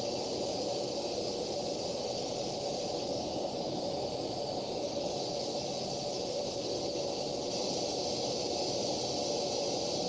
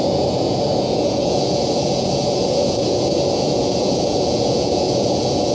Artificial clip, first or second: second